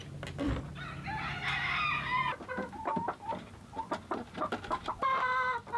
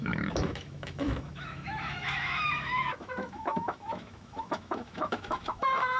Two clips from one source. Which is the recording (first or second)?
first